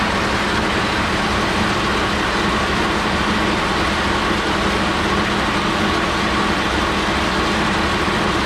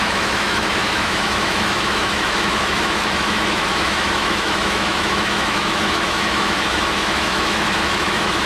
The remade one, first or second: second